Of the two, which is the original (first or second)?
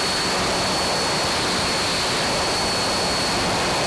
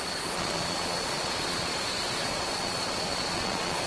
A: first